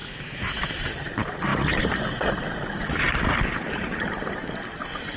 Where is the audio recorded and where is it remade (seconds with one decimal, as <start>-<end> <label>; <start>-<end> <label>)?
0.0-0.9 remade; 0.9-5.2 recorded